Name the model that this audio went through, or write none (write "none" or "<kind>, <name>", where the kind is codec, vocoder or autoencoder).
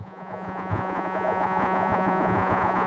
vocoder, Vocos